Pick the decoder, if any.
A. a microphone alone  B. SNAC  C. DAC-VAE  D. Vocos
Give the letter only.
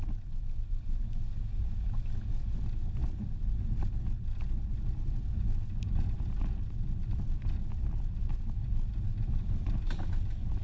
A